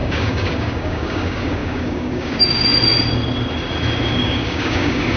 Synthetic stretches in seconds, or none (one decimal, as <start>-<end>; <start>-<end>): 0.0-2.7; 4.1-5.2